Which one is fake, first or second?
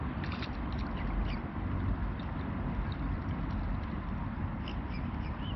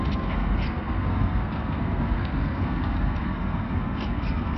second